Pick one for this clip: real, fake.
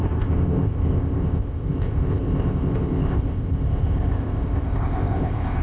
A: fake